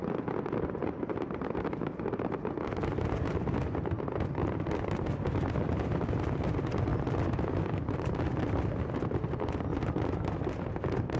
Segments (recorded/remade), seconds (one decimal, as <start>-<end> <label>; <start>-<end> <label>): 0.0-3.3 remade; 3.3-11.2 recorded